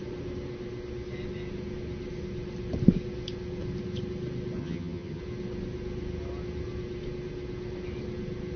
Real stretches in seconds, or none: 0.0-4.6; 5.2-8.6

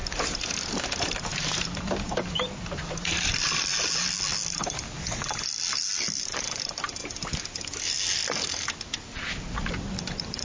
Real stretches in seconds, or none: 0.0-0.5; 3.7-6.6; 7.0-10.0

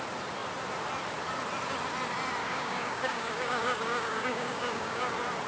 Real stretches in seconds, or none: 0.0-2.4; 5.1-5.5

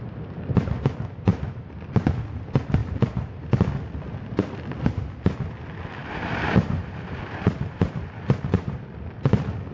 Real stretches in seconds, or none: 0.0-2.8; 3.5-6.0; 8.8-9.7